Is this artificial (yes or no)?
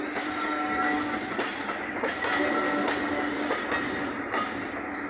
no